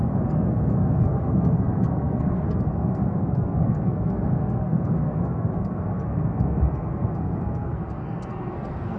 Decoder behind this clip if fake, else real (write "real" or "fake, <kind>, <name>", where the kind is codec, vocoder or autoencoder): fake, codec, SNAC